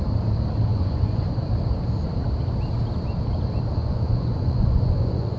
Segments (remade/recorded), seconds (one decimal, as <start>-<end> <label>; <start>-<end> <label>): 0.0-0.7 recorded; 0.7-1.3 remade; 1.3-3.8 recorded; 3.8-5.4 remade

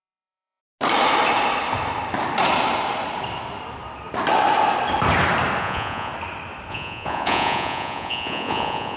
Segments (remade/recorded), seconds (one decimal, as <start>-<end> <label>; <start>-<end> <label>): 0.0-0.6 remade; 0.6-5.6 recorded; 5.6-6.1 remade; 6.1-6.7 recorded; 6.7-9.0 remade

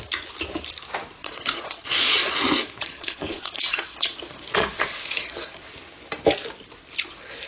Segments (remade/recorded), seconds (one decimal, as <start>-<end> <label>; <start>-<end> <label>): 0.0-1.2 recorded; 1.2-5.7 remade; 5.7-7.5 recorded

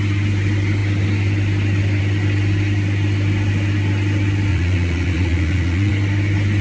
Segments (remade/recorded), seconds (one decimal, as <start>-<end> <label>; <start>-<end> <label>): 0.0-4.5 recorded; 4.5-5.9 remade; 5.9-6.6 recorded

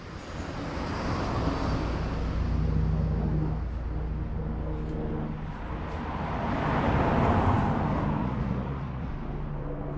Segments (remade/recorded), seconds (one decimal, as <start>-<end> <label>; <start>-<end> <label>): 0.0-8.2 recorded; 8.2-9.1 remade; 9.1-10.0 recorded

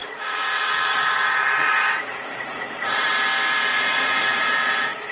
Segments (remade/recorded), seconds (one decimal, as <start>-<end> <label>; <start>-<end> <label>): 0.0-3.1 remade; 3.1-3.7 recorded; 3.7-4.5 remade; 4.5-5.1 recorded

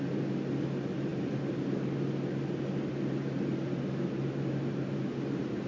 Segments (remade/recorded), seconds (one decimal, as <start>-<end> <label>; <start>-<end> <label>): 0.0-5.7 recorded

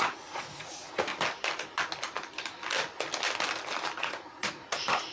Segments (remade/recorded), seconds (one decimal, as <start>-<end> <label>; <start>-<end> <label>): 0.0-1.1 remade; 1.1-4.0 recorded; 4.0-5.1 remade